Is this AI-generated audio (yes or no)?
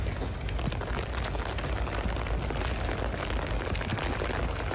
no